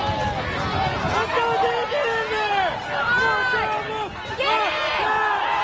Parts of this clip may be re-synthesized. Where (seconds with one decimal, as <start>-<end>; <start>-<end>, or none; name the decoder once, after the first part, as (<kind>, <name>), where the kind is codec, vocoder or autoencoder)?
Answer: none